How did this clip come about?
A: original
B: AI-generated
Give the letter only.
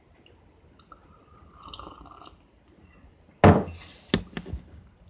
A